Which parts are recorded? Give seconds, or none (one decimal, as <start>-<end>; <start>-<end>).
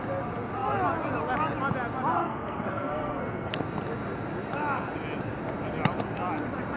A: 0.0-2.2; 3.5-6.8